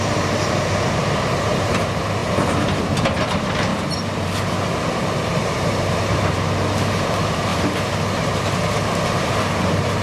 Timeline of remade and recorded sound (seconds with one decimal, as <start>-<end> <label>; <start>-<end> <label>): 0.0-10.0 remade

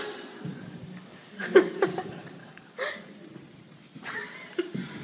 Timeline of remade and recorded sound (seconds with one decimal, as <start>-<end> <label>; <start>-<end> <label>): 0.0-0.5 recorded; 0.5-1.7 remade; 1.7-2.4 recorded; 2.4-3.1 remade; 3.1-5.0 recorded